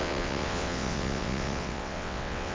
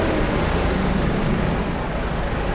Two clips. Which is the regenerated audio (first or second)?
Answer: first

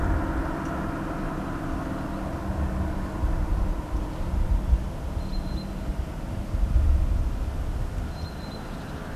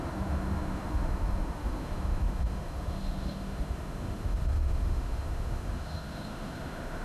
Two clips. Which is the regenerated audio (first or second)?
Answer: second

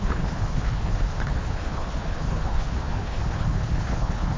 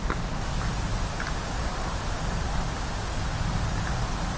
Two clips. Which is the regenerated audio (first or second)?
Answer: first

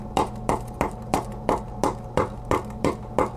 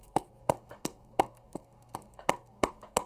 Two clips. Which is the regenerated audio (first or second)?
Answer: second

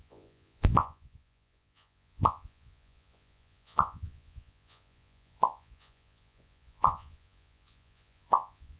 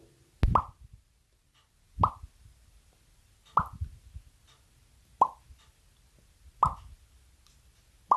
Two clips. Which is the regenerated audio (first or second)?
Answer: first